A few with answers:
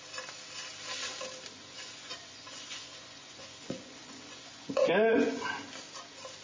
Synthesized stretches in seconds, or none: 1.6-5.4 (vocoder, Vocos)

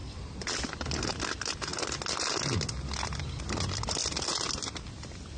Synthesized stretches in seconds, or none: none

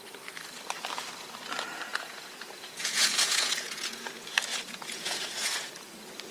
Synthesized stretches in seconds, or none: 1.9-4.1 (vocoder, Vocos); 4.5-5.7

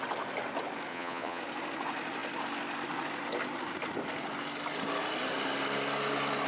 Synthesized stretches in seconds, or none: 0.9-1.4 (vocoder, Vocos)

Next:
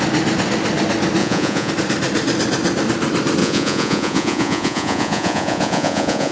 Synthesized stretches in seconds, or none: 1.2-1.7 (vocoder, Vocos); 3.4-6.3